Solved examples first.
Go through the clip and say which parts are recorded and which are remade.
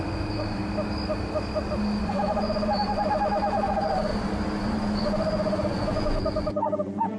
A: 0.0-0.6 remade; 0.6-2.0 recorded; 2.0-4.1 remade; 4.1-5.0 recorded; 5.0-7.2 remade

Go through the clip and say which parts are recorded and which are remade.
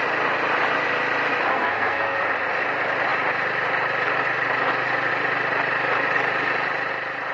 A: 0.0-1.5 recorded; 1.5-2.2 remade; 2.2-7.3 recorded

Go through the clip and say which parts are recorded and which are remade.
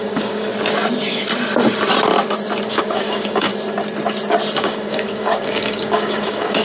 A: 0.0-0.5 remade; 0.5-2.7 recorded; 2.7-3.5 remade; 3.5-4.6 recorded; 4.6-6.6 remade